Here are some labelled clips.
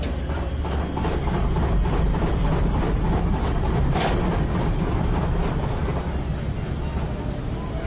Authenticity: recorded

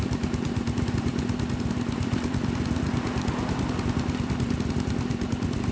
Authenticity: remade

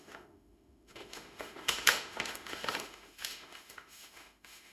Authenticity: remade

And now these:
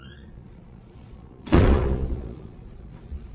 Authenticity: remade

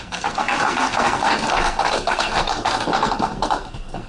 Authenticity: remade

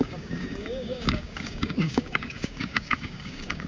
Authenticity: remade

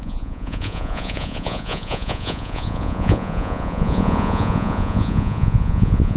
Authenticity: remade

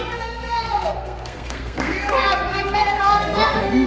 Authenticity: remade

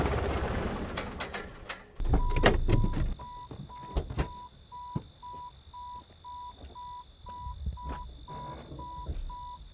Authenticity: recorded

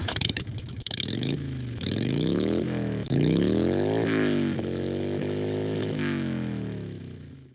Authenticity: remade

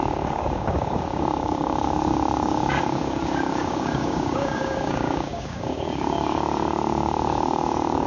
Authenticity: remade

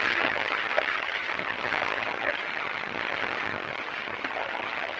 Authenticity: remade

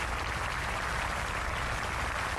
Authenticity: recorded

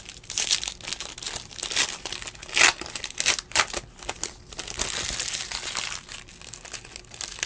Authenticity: recorded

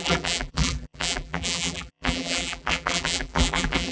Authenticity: remade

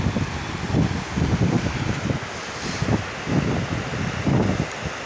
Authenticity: recorded